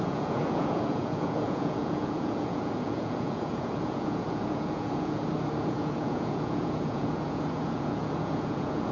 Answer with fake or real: fake